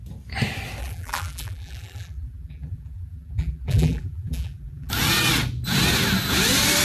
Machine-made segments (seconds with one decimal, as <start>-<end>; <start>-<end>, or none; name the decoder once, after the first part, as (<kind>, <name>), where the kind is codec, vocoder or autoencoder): 0.8-4.9 (vocoder, BigVGAN v2)